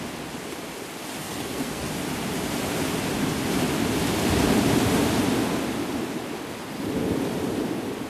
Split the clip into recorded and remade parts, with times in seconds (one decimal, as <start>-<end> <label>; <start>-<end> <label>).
0.0-1.2 recorded; 1.2-1.9 remade; 1.9-8.1 recorded